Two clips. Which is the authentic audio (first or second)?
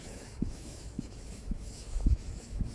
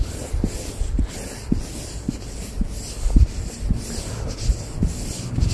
second